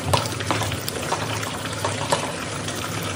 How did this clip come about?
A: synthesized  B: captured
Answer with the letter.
A